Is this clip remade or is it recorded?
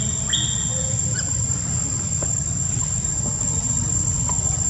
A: recorded